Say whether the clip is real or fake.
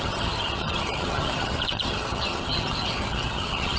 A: fake